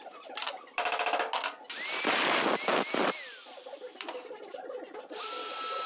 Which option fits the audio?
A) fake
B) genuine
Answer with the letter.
B